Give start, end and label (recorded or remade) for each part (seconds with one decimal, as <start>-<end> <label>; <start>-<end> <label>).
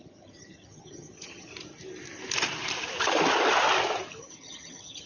0.0-1.5 remade; 1.5-4.2 recorded; 4.2-5.1 remade